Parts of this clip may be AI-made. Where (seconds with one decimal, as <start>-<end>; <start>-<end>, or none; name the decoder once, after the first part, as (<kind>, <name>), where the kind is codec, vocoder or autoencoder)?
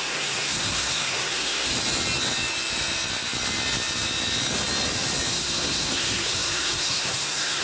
0.0-1.7 (codec, SNAC); 5.3-7.6